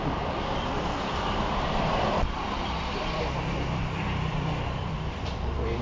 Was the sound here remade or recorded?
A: remade